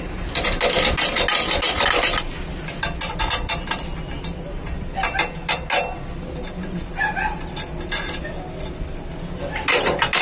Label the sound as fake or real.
real